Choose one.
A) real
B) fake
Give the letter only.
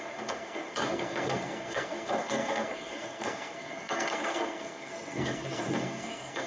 B